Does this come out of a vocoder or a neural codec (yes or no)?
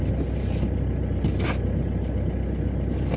no